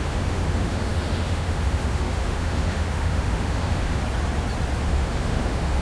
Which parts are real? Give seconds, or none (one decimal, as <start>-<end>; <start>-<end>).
4.0-4.8